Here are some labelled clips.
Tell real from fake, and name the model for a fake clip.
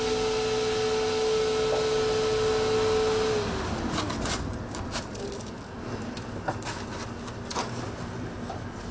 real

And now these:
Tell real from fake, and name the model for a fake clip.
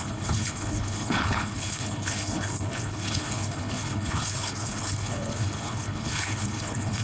fake, codec, HILCodec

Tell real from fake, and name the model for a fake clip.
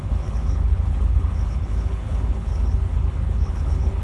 fake, codec, HILCodec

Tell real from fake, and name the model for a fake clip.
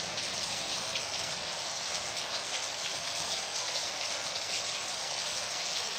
fake, codec, SNAC